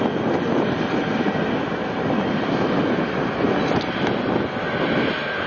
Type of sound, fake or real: real